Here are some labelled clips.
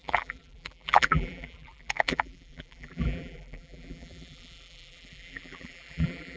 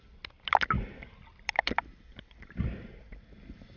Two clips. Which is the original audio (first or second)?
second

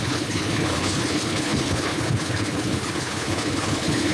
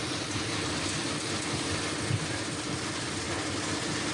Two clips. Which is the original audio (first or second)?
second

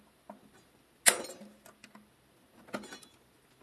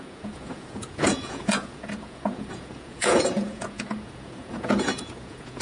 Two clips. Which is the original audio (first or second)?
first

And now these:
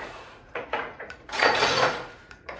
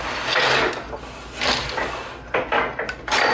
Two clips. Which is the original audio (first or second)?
second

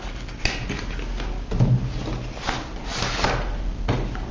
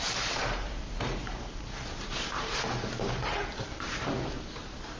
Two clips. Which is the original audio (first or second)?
first